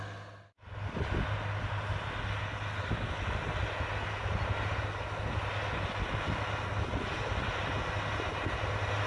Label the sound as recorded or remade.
recorded